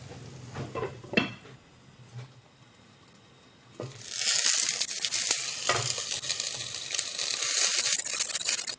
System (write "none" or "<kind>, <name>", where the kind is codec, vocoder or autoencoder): none